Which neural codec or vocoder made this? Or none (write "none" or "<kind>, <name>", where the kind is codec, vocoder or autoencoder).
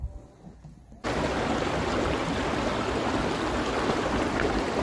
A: none